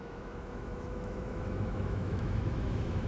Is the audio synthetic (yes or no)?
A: yes